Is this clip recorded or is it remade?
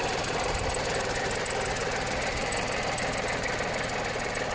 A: recorded